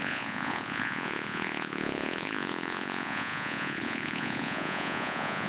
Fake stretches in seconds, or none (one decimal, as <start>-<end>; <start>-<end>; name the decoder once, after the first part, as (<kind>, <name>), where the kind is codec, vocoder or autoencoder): 0.0-5.5 (vocoder, Vocos)